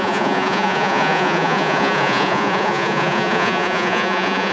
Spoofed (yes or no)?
yes